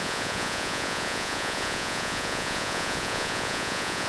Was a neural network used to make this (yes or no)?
yes